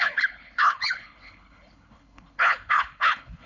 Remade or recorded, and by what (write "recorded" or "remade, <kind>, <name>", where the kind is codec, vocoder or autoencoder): remade, codec, HILCodec